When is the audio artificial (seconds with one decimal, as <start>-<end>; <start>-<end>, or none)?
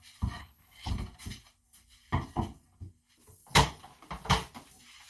0.4-0.9